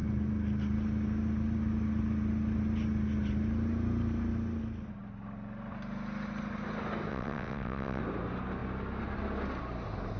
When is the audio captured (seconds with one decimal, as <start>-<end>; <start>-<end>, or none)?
0.0-7.1; 8.0-10.2